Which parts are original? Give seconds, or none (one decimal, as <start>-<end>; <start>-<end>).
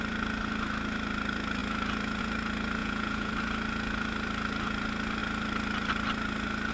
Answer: 0.0-2.8; 3.3-6.7